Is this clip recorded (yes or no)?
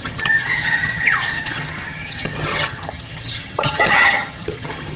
no